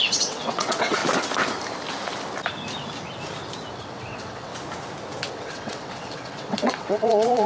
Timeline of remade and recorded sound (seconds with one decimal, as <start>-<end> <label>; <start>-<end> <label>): 0.0-1.0 remade; 1.0-3.7 recorded; 3.7-4.5 remade; 4.5-5.3 recorded; 5.3-7.5 remade